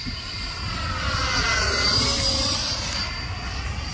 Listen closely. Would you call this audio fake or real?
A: real